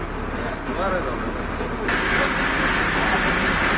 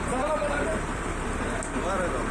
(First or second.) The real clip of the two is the first